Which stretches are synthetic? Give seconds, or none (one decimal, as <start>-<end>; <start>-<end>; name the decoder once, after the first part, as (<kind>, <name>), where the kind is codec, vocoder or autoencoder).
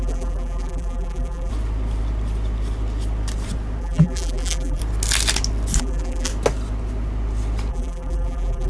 0.0-1.5 (vocoder, BigVGAN v2); 3.8-4.8; 5.8-6.3; 7.7-8.7